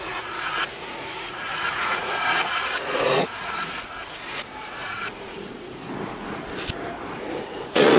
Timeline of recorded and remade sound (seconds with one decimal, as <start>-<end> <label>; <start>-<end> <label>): 0.0-5.8 remade; 5.8-7.3 recorded; 7.3-8.0 remade